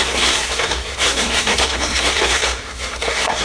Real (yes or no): no